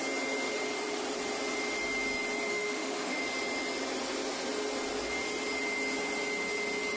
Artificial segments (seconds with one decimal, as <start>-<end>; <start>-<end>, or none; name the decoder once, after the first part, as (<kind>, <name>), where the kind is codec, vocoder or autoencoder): 2.5-3.2 (autoencoder, DAC-VAE)